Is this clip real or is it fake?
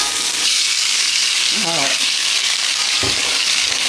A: fake